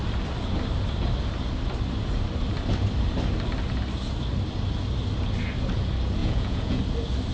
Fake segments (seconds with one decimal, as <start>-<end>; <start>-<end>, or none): 6.2-6.8